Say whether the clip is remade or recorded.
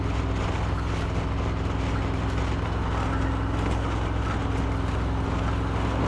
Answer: recorded